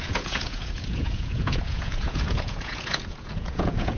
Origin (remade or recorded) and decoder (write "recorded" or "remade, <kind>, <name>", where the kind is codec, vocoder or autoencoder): remade, vocoder, Vocos